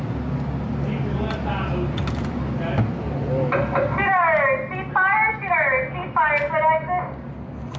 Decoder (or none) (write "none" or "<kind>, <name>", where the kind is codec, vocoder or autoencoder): none